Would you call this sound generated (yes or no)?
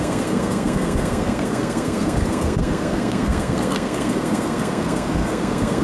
yes